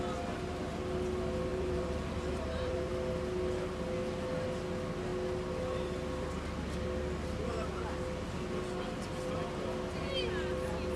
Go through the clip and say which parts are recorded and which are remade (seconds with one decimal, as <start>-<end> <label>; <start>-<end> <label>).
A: 0.0-1.5 recorded; 1.5-2.9 remade; 2.9-11.0 recorded

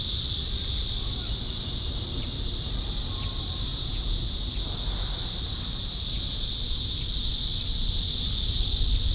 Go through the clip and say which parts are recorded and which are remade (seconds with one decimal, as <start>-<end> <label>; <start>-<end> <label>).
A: 0.0-3.7 recorded; 3.7-4.2 remade; 4.2-9.1 recorded

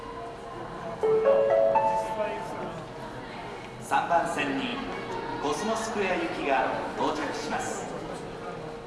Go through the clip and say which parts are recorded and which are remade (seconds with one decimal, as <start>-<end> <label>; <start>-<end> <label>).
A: 0.0-7.2 recorded; 7.2-8.0 remade; 8.0-8.9 recorded

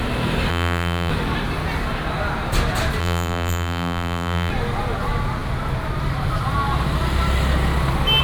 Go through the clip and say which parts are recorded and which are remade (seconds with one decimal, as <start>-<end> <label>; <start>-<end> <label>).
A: 0.0-0.5 recorded; 0.5-1.1 remade; 1.1-3.0 recorded; 3.0-4.5 remade; 4.5-8.2 recorded

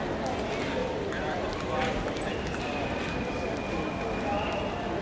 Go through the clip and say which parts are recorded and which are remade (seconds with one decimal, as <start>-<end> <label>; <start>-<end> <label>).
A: 0.0-0.8 recorded; 0.8-2.3 remade; 2.3-5.0 recorded

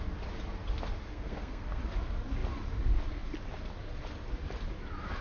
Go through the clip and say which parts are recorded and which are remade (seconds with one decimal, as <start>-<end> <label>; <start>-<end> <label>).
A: 0.0-1.1 recorded; 1.1-1.8 remade; 1.8-5.2 recorded